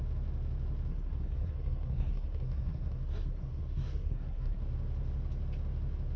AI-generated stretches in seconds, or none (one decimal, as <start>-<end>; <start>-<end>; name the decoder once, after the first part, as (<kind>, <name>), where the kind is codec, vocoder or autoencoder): 0.9-4.6 (codec, SNAC)